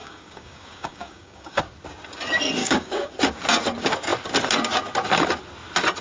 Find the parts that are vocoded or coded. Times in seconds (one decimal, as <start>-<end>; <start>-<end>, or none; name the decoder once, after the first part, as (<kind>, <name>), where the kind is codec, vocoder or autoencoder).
0.0-1.6 (codec, DAC); 2.6-3.1